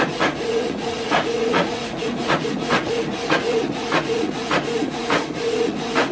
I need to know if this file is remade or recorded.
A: remade